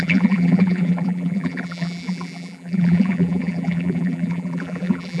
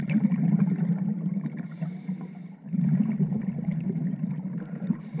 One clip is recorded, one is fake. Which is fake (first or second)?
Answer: first